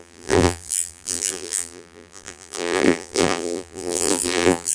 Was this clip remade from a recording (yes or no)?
yes